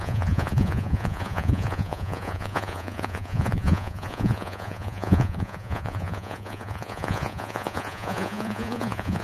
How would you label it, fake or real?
fake